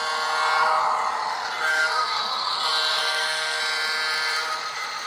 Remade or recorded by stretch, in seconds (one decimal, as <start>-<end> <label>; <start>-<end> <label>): 0.0-1.7 recorded; 1.7-2.5 remade; 2.5-2.9 recorded; 2.9-3.6 remade; 3.6-5.1 recorded